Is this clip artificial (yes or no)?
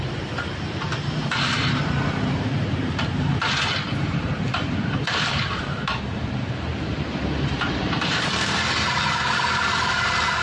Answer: yes